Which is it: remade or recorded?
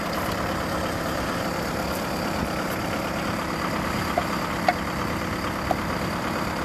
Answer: remade